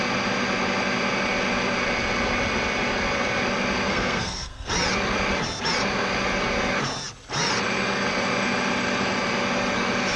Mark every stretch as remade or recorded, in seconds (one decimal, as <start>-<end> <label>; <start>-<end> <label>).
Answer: 0.0-3.9 recorded; 3.9-4.7 remade; 4.7-10.2 recorded